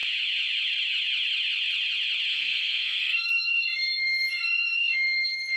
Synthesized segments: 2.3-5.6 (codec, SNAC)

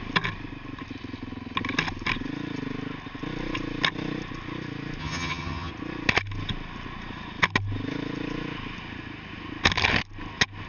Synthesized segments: 5.0-5.7 (vocoder, HiFi-GAN)

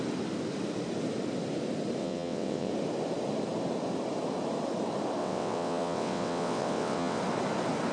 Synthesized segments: 2.0-2.7 (vocoder, WaveNeXt); 5.2-7.2

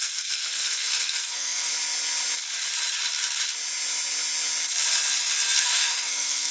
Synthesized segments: 0.0-1.7 (codec, SNAC); 5.6-6.5

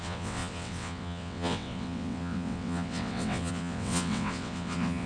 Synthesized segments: 0.0-5.1 (vocoder, WaveNeXt)

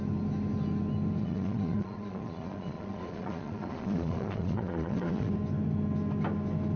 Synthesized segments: 1.2-5.3 (vocoder, Vocos)

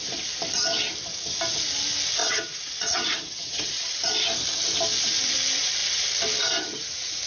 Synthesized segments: 2.2-4.0 (vocoder, WaveNeXt)